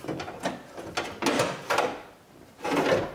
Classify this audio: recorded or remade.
recorded